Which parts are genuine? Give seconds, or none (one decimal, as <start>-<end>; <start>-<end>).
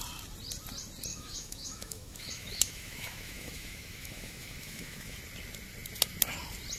0.0-1.1; 5.2-6.8